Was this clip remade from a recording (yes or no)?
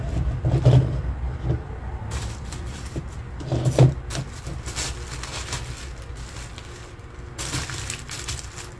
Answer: no